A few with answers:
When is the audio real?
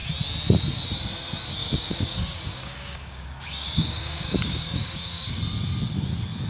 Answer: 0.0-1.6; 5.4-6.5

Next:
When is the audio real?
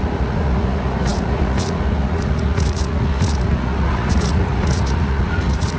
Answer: none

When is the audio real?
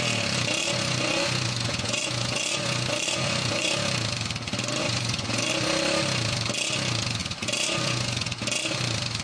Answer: 0.0-0.6; 3.7-4.8; 5.5-7.2; 8.4-9.2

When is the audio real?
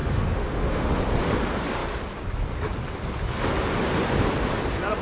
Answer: 1.0-5.0